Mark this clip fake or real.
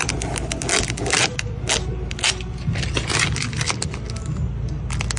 real